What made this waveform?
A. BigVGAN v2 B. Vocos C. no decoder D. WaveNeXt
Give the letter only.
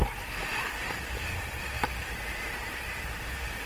A